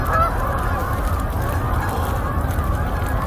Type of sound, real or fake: real